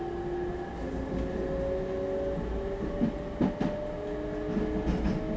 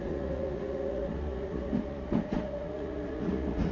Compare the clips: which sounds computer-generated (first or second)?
second